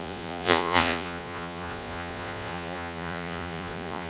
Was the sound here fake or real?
fake